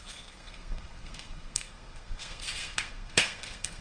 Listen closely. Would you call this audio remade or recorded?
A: remade